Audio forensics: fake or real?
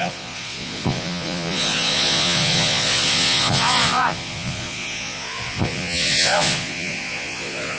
fake